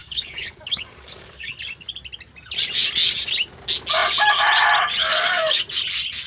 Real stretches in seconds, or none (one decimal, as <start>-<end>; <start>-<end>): 1.5-5.0; 5.6-6.3